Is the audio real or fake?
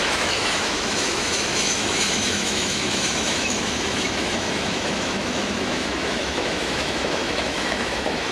fake